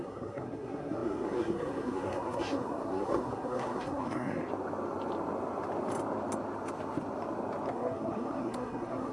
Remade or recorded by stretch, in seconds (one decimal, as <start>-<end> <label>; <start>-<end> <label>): 0.0-4.4 remade; 4.4-7.7 recorded; 7.7-9.1 remade